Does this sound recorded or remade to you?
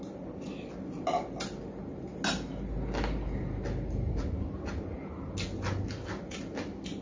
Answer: recorded